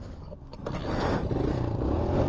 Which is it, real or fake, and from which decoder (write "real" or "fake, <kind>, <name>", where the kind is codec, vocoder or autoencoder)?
real